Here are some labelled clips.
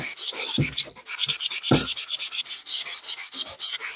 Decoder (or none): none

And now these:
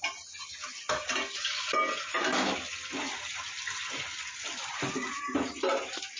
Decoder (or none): none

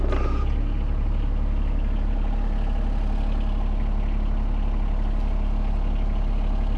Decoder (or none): none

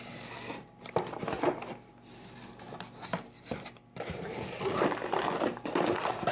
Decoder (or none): vocoder, BigVGAN v2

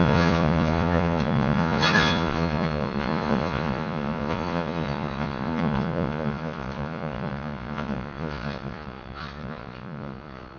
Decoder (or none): vocoder, Vocos